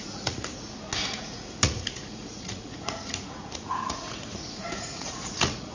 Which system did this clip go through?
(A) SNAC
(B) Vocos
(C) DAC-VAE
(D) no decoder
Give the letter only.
B